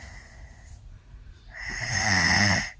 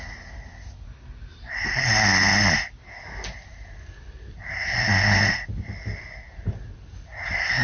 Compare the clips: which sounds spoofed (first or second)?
first